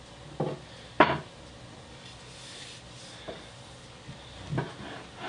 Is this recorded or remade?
recorded